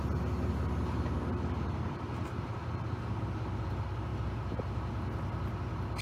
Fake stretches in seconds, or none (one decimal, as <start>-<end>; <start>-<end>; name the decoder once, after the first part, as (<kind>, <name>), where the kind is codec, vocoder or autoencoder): none